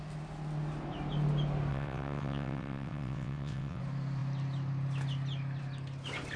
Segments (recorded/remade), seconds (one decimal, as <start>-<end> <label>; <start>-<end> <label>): 0.0-1.7 recorded; 1.7-3.8 remade; 3.8-6.4 recorded